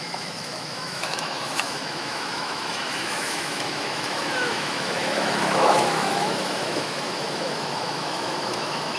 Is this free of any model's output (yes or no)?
no